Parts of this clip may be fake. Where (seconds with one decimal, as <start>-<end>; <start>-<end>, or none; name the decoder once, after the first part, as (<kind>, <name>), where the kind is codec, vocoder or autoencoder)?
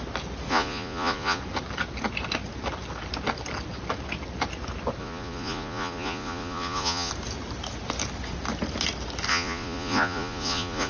0.5-1.4 (vocoder, Vocos); 5.0-7.1; 9.3-10.9